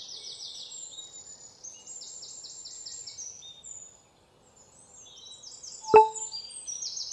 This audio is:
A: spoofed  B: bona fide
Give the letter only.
B